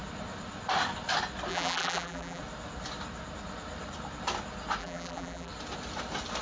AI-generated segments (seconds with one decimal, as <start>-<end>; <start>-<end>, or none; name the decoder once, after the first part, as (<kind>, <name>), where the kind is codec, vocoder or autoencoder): 1.5-2.4 (vocoder, BigVGAN v2); 4.8-5.5

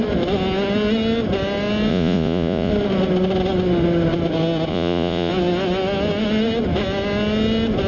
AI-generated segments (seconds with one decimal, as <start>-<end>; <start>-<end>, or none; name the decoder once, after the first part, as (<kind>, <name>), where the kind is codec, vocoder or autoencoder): 1.9-2.7 (vocoder, Vocos); 4.7-5.3

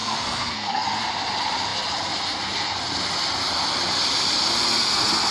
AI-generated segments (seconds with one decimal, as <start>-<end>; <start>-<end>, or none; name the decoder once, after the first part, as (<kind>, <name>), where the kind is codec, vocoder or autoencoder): 0.0-1.0 (codec, SNAC)

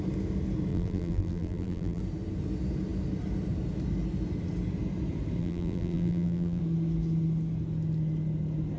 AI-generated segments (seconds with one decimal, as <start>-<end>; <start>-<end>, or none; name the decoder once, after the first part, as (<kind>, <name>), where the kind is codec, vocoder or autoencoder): 0.7-2.0 (vocoder, BigVGAN v2); 5.4-6.6

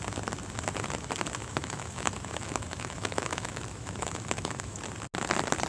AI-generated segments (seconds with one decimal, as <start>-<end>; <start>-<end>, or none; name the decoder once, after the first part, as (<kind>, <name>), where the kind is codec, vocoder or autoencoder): 1.4-4.8 (autoencoder, DAC-VAE)

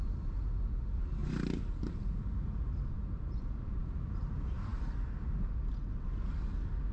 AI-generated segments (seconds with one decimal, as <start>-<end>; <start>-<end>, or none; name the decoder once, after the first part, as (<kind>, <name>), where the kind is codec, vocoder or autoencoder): 1.2-2.2 (vocoder, BigVGAN v2); 3.8-4.3

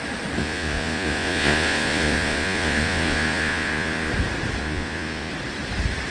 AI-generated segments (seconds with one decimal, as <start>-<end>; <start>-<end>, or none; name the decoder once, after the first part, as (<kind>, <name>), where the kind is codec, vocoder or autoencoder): 0.4-4.1 (vocoder, Vocos); 4.6-5.3